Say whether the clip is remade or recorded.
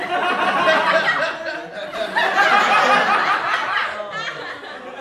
recorded